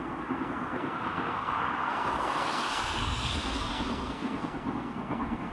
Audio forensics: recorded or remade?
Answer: remade